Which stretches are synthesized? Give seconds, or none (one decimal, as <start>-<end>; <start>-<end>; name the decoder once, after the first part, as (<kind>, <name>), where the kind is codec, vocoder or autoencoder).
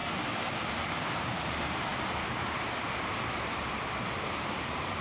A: 0.7-5.0 (vocoder, BigVGAN v2)